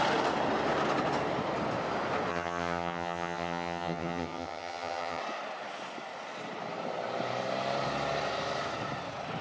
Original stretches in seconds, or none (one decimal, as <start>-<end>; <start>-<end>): 0.0-2.3; 5.2-9.4